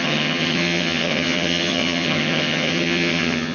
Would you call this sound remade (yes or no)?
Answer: yes